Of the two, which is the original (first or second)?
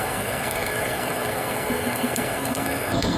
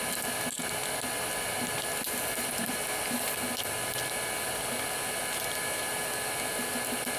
second